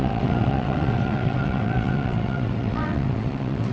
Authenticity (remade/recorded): remade